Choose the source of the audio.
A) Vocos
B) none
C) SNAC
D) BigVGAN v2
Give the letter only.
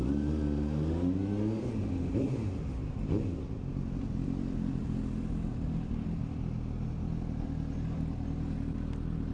B